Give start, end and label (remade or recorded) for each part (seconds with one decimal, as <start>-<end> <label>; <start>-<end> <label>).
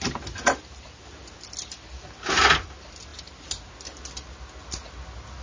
0.0-5.4 recorded